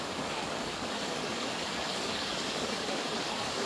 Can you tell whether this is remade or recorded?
remade